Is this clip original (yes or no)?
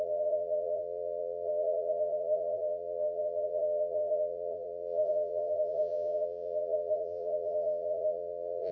no